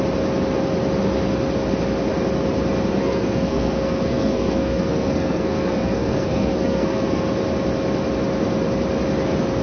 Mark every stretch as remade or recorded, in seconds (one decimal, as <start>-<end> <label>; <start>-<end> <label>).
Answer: 0.0-3.0 recorded; 3.0-7.2 remade; 7.2-9.6 recorded